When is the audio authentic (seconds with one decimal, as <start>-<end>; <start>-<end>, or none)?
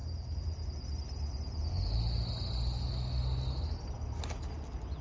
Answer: 0.0-5.0